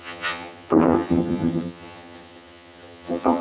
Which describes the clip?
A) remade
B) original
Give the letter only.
A